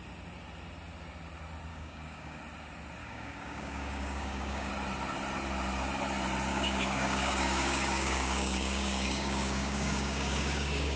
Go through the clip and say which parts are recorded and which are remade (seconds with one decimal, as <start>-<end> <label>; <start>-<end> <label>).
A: 0.0-1.7 recorded; 1.7-2.4 remade; 2.4-3.0 recorded; 3.0-4.7 remade; 4.7-6.5 recorded; 6.5-11.0 remade